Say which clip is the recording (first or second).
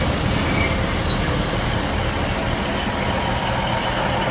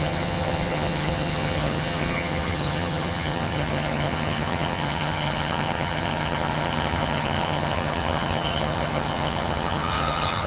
first